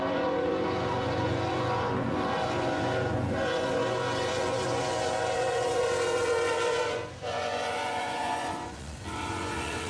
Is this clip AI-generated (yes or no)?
yes